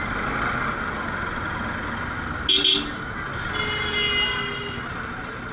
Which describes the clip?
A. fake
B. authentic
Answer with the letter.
B